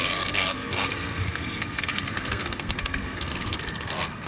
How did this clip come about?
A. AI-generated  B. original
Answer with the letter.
A